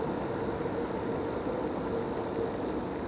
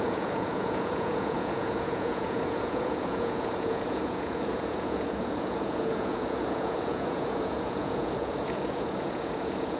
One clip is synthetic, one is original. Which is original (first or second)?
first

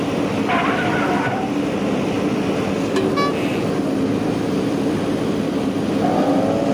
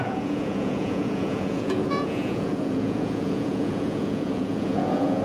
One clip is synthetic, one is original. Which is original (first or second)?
first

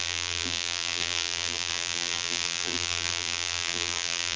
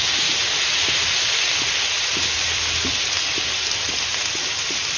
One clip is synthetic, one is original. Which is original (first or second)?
second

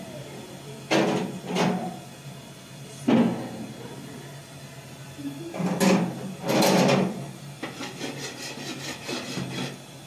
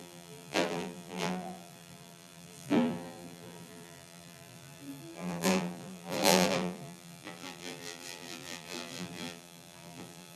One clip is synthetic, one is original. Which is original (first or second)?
first